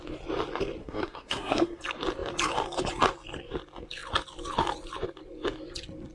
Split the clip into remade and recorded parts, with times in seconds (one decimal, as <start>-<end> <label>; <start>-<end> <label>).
0.0-0.8 recorded; 0.8-1.8 remade; 1.8-6.1 recorded